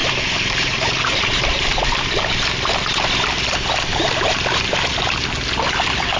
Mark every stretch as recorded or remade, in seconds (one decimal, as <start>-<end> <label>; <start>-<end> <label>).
0.0-6.2 recorded